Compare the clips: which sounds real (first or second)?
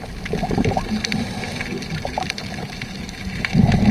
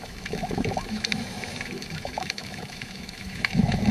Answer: first